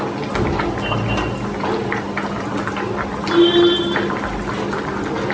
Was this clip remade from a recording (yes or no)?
no